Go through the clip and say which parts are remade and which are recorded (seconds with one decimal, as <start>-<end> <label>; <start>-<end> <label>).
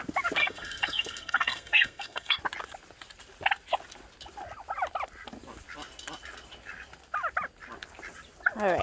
0.0-0.4 recorded; 0.4-2.4 remade; 2.4-8.8 recorded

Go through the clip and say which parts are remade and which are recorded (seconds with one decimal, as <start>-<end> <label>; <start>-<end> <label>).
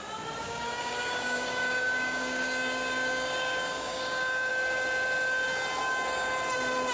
0.0-0.4 recorded; 0.4-4.5 remade; 4.5-6.9 recorded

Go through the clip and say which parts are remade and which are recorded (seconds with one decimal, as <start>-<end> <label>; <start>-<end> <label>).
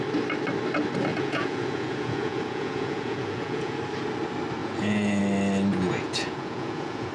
0.0-1.1 recorded; 1.1-3.8 remade; 3.8-4.6 recorded; 4.6-5.2 remade; 5.2-5.7 recorded; 5.7-7.1 remade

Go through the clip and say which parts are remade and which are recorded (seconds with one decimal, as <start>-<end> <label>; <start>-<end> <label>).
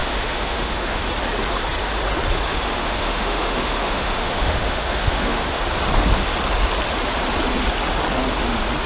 0.0-1.1 remade; 1.1-2.5 recorded; 2.5-5.6 remade; 5.6-8.9 recorded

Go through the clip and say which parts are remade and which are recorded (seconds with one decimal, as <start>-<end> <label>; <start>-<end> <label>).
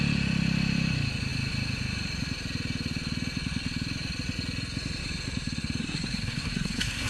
0.0-5.8 recorded; 5.8-7.1 remade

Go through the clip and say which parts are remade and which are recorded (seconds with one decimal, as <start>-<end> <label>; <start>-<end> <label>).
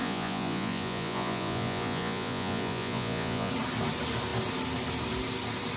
0.0-3.5 remade; 3.5-5.8 recorded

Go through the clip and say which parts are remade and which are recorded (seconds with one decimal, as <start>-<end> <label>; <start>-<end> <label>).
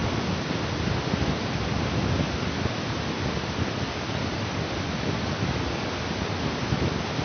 0.0-7.2 recorded